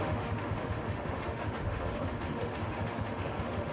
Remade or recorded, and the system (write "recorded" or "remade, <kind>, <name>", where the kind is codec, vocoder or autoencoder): remade, autoencoder, DAC-VAE